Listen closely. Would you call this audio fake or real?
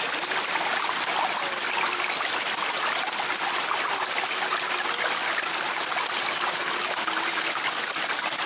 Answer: real